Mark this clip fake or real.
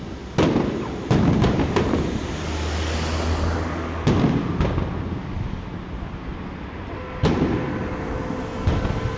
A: real